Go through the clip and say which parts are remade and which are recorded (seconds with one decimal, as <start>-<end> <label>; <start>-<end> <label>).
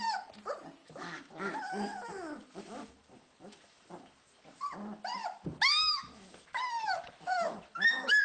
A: 0.0-0.8 recorded; 0.8-4.4 remade; 4.4-5.2 recorded; 5.2-8.2 remade